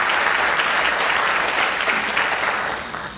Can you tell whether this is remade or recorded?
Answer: recorded